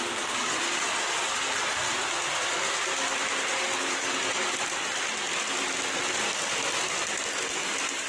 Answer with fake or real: real